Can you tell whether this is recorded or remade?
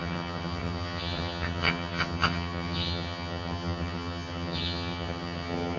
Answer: remade